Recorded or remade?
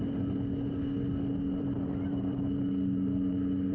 recorded